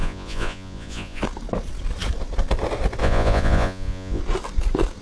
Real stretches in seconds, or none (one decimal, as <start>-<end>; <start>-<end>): 1.2-3.0; 4.2-5.0